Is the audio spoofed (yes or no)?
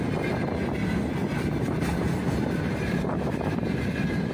no